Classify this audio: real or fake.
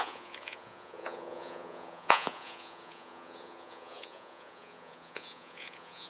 fake